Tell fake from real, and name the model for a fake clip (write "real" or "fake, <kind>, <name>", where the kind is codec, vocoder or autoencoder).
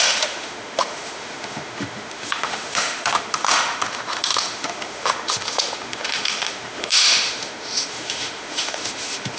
fake, autoencoder, DAC-VAE